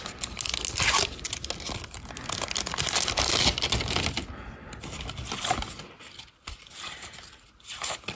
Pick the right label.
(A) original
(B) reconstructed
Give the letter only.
A